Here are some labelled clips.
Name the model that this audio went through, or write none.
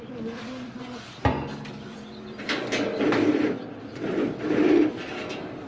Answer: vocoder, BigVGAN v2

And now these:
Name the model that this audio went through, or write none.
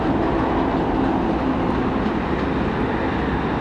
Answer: none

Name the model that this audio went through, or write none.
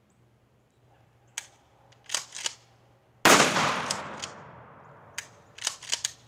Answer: none